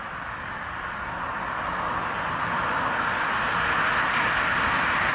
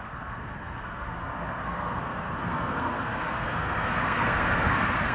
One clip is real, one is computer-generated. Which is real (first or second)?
first